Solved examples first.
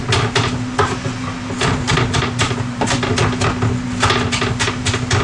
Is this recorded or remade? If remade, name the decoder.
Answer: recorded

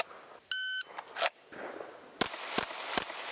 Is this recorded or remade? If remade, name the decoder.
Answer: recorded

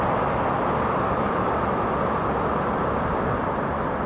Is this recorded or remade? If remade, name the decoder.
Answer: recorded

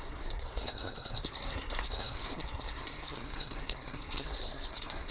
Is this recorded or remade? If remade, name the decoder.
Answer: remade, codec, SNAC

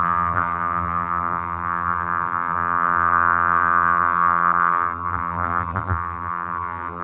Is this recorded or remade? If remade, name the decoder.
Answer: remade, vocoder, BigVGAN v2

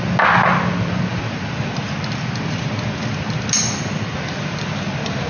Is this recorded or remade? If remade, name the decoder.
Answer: recorded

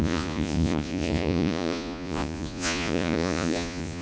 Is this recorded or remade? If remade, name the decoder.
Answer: remade, vocoder, Vocos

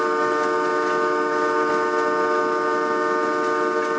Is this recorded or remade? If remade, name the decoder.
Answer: recorded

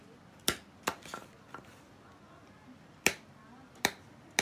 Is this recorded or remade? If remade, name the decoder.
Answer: recorded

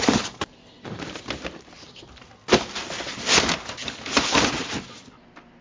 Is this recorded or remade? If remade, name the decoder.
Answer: recorded